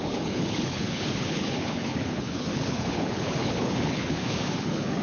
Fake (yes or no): yes